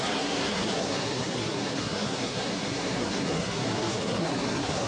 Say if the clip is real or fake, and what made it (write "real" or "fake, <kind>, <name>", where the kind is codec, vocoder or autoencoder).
fake, codec, SNAC